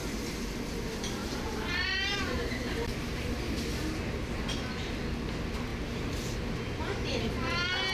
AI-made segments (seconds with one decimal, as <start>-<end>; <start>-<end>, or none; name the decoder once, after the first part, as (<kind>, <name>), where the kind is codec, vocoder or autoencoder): 1.2-3.2 (vocoder, BigVGAN v2)